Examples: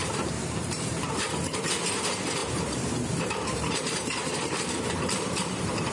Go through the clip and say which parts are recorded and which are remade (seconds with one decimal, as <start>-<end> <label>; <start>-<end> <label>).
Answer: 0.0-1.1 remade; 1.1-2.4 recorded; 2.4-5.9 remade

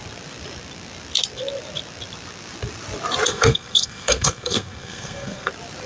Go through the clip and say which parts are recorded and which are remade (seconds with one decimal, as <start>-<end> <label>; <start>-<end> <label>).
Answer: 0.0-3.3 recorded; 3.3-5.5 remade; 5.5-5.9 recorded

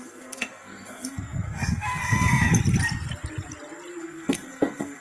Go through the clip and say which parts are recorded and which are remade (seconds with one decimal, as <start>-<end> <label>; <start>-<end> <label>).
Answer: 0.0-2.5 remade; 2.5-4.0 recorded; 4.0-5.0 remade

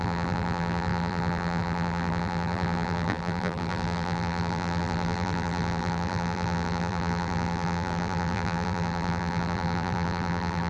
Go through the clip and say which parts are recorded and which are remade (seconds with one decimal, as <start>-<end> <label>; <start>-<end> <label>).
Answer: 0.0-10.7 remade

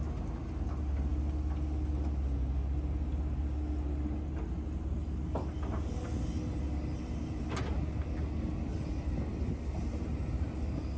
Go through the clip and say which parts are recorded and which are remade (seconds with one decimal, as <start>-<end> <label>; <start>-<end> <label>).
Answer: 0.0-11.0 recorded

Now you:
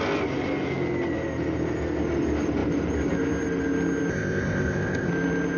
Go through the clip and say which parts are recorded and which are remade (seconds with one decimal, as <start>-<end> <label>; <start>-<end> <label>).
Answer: 0.0-4.1 recorded; 4.1-5.1 remade; 5.1-5.6 recorded

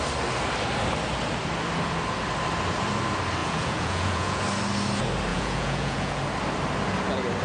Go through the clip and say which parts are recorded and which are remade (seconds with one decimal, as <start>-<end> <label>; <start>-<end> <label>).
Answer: 0.0-3.4 recorded; 3.4-4.4 remade; 4.4-5.3 recorded; 5.3-6.2 remade; 6.2-7.4 recorded

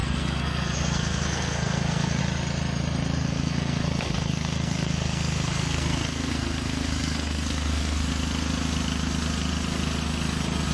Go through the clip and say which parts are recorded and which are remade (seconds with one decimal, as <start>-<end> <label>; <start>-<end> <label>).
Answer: 0.0-2.2 remade; 2.2-3.2 recorded; 3.2-8.1 remade; 8.1-10.7 recorded